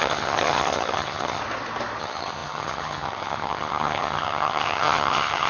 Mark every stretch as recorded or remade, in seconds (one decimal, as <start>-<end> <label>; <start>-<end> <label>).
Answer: 0.0-1.4 remade; 1.4-2.0 recorded; 2.0-5.5 remade